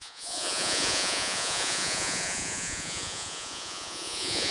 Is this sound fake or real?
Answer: fake